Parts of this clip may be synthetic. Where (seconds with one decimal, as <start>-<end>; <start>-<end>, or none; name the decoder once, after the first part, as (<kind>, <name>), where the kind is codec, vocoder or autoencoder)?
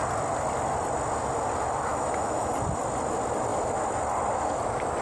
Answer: 1.9-2.5 (autoencoder, DAC-VAE)